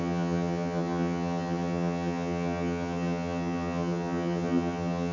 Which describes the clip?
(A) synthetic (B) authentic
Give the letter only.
A